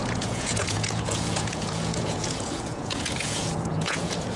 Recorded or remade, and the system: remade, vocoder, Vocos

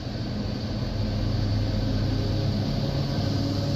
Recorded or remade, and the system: recorded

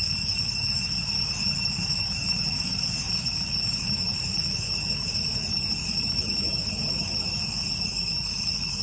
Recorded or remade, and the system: remade, autoencoder, DAC-VAE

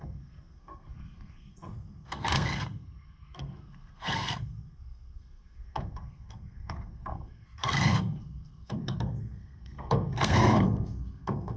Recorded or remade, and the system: remade, codec, SNAC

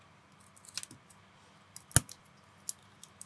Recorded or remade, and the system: recorded